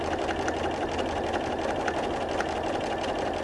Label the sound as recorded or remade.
recorded